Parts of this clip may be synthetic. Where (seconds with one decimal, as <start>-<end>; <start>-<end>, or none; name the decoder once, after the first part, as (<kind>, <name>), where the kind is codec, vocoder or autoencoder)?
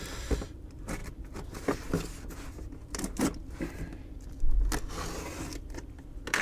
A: none